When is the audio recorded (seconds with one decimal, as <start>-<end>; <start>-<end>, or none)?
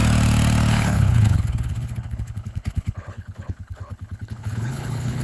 0.0-0.7